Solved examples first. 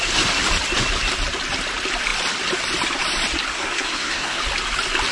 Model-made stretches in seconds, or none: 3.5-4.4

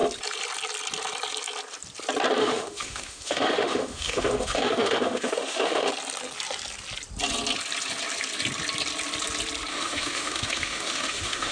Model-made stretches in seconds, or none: 2.4-5.9; 9.7-11.5

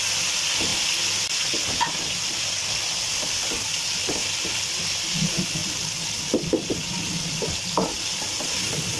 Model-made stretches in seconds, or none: none

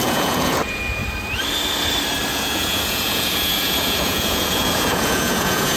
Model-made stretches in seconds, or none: 0.0-1.0; 2.3-5.8

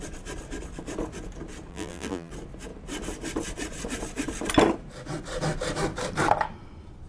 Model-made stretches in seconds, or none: 1.7-2.3